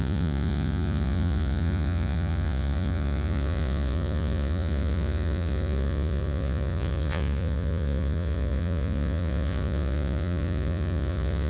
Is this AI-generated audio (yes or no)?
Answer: yes